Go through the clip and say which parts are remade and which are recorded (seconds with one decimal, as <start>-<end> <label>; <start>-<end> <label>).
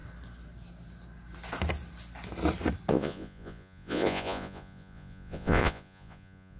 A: 0.0-2.9 recorded; 2.9-6.6 remade